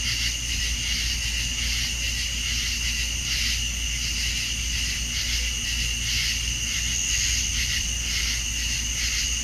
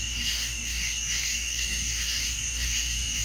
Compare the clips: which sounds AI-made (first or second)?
second